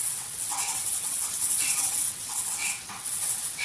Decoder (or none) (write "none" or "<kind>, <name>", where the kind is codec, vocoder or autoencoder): vocoder, WaveNeXt